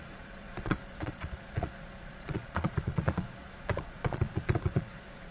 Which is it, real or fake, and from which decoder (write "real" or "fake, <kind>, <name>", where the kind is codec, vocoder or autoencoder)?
fake, vocoder, Vocos